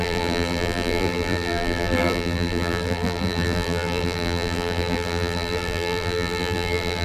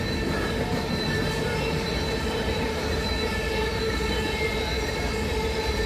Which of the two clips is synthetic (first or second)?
first